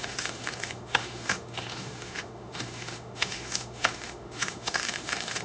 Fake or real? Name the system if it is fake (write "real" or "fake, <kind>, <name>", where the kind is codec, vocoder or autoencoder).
fake, autoencoder, DAC-VAE